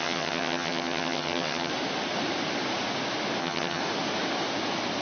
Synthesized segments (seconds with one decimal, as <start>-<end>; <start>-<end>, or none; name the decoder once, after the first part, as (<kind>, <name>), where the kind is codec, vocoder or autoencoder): 0.0-1.7 (vocoder, HiFi-GAN); 3.4-3.8